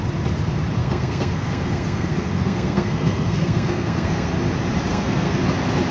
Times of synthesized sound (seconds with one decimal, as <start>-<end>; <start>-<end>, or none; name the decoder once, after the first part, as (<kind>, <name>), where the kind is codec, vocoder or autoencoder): 0.8-4.3 (codec, SNAC); 4.9-5.4